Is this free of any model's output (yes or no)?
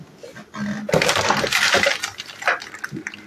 yes